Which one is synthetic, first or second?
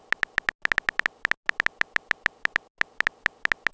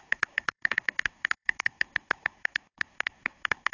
second